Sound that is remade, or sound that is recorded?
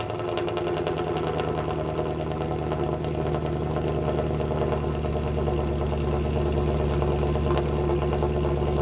recorded